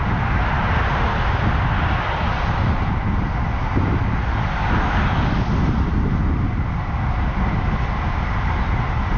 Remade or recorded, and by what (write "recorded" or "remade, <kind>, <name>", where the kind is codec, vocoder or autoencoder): recorded